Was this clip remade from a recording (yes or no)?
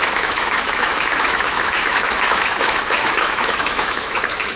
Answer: yes